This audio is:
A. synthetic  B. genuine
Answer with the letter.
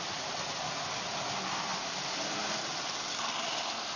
B